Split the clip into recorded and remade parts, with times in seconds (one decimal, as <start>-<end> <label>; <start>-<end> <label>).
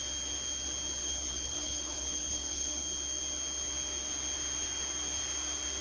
0.0-1.0 recorded; 1.0-2.8 remade; 2.8-5.8 recorded